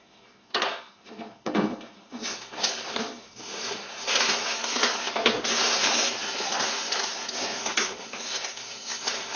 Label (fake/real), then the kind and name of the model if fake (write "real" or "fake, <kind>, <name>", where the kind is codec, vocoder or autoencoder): fake, codec, SNAC